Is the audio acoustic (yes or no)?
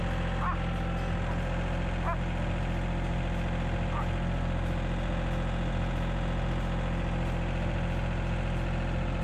yes